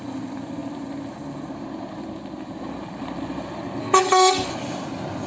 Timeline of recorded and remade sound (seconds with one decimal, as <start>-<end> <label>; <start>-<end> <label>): 0.0-3.8 recorded; 3.8-4.5 remade; 4.5-5.3 recorded